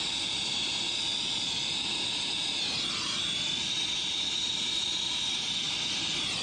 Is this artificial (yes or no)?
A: no